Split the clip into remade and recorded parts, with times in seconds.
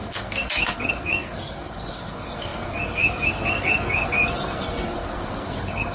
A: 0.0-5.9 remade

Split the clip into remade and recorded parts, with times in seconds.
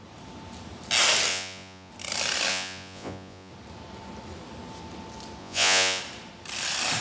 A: 0.0-1.3 recorded; 1.3-1.9 remade; 1.9-2.5 recorded; 2.5-3.5 remade; 3.5-5.4 recorded; 5.4-6.0 remade; 6.0-7.0 recorded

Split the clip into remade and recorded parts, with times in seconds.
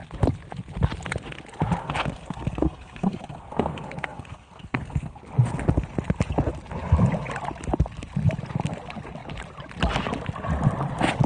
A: 0.0-1.8 recorded; 1.8-5.2 remade; 5.2-11.3 recorded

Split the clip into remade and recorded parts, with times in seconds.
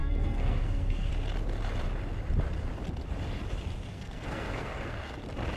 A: 0.0-1.1 remade; 1.1-3.9 recorded; 3.9-5.1 remade; 5.1-5.6 recorded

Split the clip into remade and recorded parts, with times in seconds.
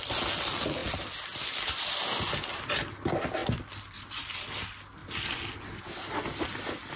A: 0.0-3.4 recorded; 3.4-4.6 remade; 4.6-5.0 recorded; 5.0-5.6 remade; 5.6-7.0 recorded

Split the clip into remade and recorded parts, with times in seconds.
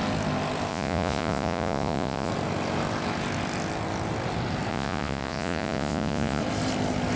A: 0.0-0.7 recorded; 0.7-2.3 remade; 2.3-4.7 recorded; 4.7-6.4 remade; 6.4-7.2 recorded